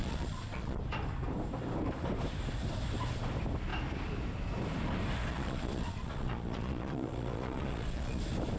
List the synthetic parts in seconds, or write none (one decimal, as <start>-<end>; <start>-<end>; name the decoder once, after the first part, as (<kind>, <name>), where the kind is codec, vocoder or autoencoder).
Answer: 0.0-0.8 (vocoder, Vocos); 5.3-8.2